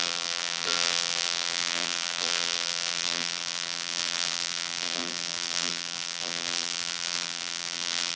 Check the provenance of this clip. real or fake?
fake